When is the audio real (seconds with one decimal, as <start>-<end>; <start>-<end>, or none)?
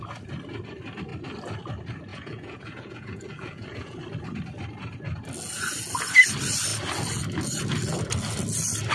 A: 0.0-2.1; 4.0-8.9